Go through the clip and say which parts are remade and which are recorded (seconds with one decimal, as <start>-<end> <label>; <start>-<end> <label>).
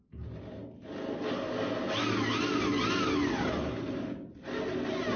0.0-5.2 recorded